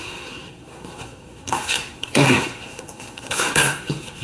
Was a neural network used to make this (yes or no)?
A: yes